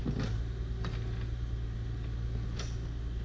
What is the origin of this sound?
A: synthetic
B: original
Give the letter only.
B